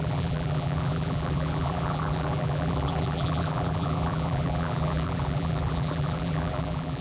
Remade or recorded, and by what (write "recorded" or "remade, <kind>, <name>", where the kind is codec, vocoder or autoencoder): remade, vocoder, BigVGAN v2